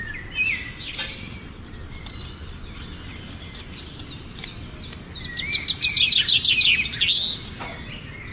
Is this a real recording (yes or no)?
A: yes